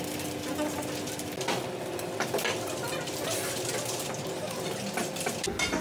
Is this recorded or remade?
recorded